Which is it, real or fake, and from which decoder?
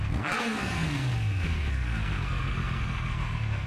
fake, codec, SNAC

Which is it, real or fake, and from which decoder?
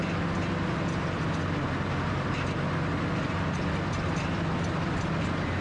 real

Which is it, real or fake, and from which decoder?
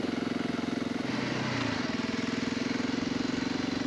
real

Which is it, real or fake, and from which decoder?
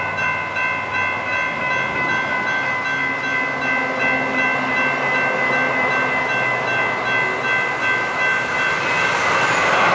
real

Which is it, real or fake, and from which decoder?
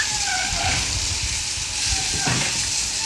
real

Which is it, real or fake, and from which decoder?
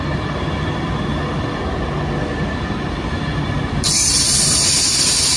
real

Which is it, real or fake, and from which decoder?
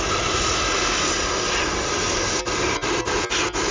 real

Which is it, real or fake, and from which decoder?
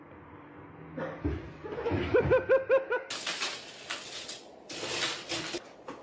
real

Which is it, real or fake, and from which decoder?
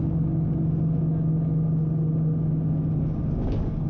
real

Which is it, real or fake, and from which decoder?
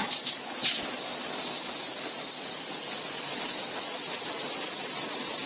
real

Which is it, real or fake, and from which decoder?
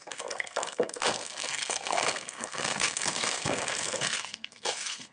fake, codec, SNAC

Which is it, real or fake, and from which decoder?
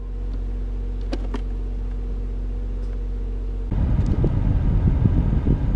real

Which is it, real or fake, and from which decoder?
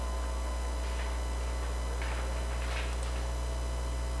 real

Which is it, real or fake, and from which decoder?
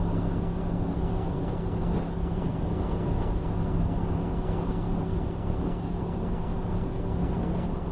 fake, codec, SNAC